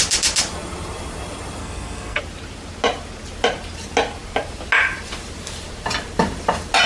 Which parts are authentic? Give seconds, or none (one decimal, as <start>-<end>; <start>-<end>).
0.0-1.6; 2.2-6.9